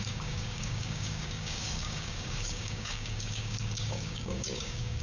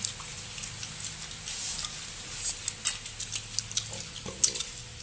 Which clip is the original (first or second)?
second